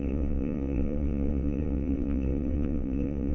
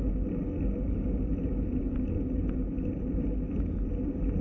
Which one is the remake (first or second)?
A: first